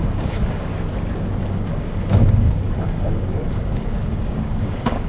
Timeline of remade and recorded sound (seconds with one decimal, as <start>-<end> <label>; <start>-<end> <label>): 0.0-0.7 remade; 0.7-1.4 recorded; 1.4-5.1 remade